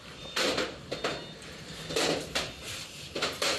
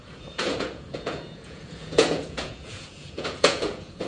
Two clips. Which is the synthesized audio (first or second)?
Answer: second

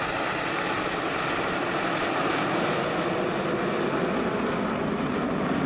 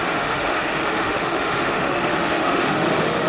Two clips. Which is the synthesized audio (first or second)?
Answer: second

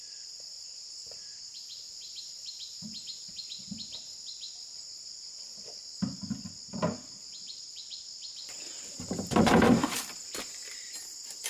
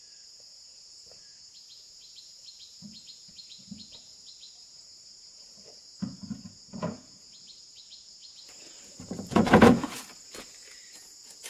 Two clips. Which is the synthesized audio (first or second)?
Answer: second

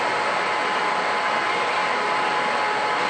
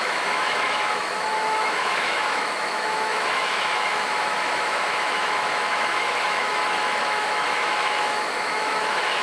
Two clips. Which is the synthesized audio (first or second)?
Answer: second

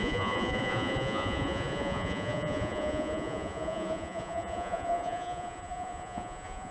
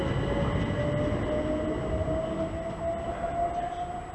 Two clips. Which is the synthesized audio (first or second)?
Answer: first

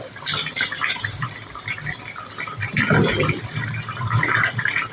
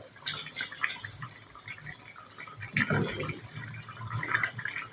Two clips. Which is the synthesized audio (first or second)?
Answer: first